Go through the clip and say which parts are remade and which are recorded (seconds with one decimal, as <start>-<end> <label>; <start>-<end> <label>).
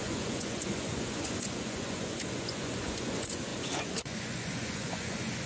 0.0-5.5 remade